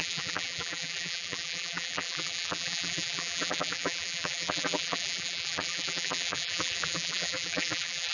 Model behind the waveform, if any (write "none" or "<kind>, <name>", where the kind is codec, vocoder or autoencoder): vocoder, BigVGAN v2